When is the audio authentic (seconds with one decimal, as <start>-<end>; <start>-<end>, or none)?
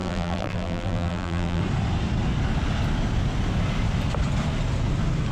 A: 1.6-5.3